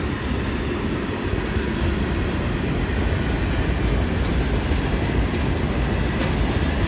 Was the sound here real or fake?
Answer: real